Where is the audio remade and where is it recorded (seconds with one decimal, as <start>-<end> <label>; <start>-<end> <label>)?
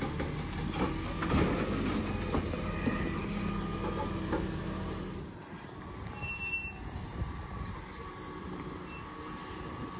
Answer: 0.0-10.0 recorded